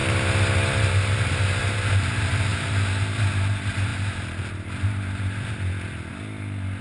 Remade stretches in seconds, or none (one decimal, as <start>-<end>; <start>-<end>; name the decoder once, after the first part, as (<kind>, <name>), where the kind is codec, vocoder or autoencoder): none